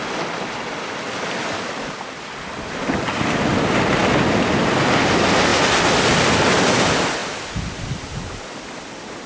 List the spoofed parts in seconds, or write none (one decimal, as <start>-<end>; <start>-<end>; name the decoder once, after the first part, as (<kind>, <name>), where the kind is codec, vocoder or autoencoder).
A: none